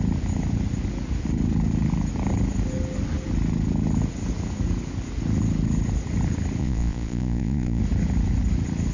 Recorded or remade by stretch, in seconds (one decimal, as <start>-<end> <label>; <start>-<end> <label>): 0.0-6.6 recorded; 6.6-7.8 remade; 7.8-8.9 recorded